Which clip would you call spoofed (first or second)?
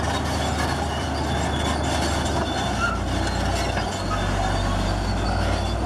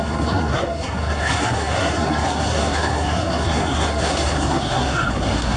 second